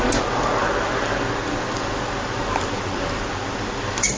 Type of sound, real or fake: real